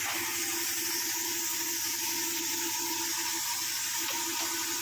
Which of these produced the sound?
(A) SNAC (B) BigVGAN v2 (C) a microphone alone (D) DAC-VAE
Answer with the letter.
C